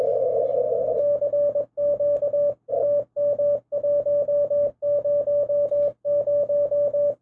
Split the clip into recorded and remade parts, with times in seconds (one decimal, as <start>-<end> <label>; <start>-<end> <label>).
0.0-7.2 recorded